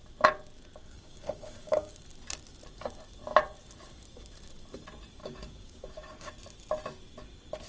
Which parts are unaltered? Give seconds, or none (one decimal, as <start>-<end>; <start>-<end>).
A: 0.0-0.8; 1.9-5.2; 6.3-7.7